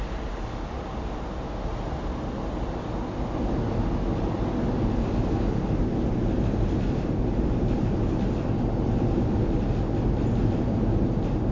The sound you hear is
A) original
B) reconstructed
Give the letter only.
A